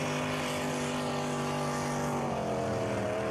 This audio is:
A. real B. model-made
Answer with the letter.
A